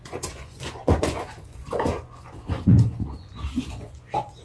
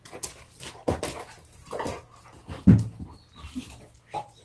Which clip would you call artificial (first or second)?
first